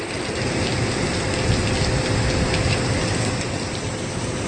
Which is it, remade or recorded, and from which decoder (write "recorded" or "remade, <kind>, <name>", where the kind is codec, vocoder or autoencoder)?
recorded